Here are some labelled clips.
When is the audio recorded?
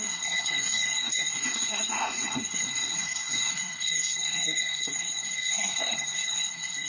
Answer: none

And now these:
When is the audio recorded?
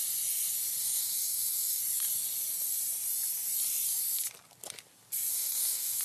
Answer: 0.0-0.8; 1.8-5.3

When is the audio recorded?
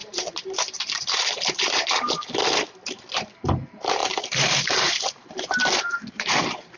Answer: 2.4-3.4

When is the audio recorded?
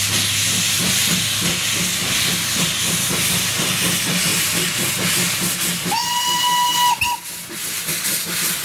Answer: 0.0-4.3; 4.9-8.6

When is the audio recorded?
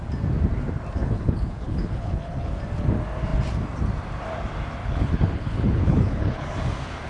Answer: 0.0-1.0; 2.5-4.8; 6.5-7.1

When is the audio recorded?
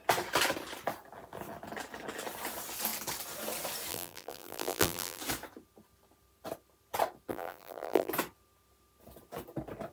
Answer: 0.0-3.9; 5.2-7.3; 8.1-9.9